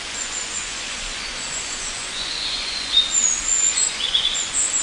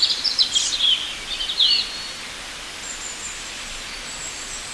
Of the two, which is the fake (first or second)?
first